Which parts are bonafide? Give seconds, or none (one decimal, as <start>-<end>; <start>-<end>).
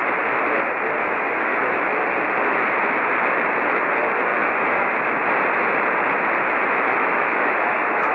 0.0-1.0; 1.8-4.3; 4.9-7.0